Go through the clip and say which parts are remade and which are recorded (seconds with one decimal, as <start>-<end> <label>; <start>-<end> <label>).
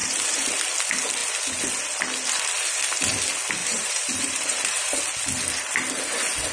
0.0-0.5 remade; 0.5-3.6 recorded; 3.6-5.0 remade; 5.0-6.5 recorded